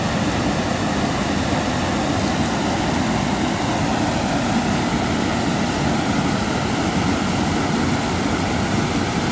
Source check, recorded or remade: recorded